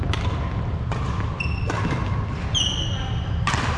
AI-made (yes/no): no